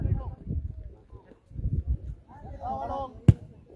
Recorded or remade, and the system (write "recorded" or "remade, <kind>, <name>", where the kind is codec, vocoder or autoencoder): recorded